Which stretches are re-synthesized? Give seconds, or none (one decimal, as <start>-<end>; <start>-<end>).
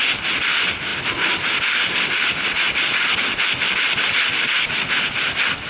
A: none